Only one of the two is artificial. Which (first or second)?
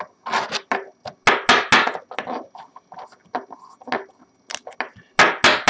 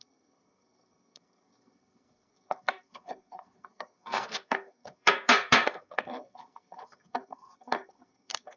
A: second